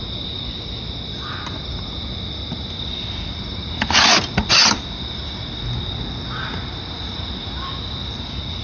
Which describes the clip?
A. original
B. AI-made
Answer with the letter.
A